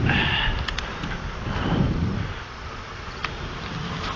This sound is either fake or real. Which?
real